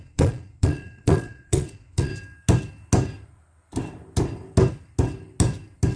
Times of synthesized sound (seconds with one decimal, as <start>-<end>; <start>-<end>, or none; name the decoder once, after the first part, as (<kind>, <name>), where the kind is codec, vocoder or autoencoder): 0.0-2.1 (vocoder, Vocos)